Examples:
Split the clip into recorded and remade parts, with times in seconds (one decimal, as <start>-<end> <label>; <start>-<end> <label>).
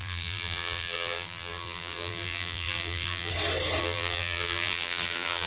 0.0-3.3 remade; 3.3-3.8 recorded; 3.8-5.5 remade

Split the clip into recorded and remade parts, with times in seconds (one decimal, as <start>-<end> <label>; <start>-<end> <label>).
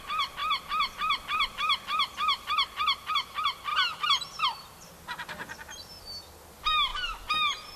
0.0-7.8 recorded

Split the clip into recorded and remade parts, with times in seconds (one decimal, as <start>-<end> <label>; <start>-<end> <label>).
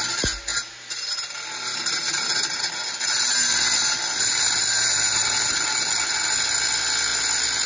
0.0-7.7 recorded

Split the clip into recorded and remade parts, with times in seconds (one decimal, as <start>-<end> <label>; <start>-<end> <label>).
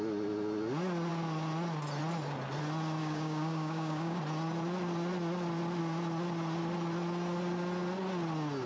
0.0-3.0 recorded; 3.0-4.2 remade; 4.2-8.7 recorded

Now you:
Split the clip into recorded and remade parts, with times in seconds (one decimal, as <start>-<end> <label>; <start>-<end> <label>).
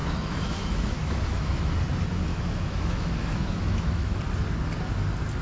0.0-1.7 remade; 1.7-2.3 recorded; 2.3-4.2 remade; 4.2-5.4 recorded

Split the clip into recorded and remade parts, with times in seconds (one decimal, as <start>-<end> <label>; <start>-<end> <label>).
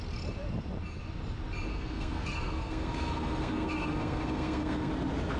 0.0-1.7 recorded; 1.7-4.9 remade; 4.9-5.4 recorded